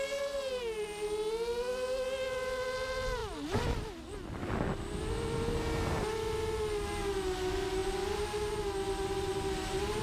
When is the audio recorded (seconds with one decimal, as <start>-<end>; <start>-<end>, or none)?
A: 0.0-10.0